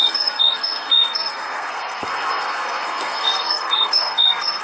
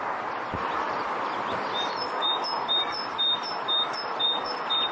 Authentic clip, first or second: second